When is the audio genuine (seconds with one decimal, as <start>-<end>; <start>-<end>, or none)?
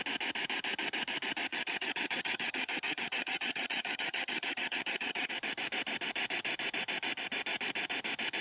0.0-1.5; 5.3-8.4